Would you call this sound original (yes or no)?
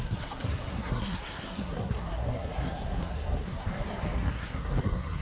no